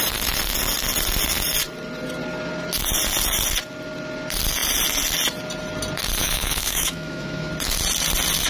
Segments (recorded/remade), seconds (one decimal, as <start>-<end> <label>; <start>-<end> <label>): 0.0-6.2 recorded; 6.2-7.5 remade; 7.5-8.5 recorded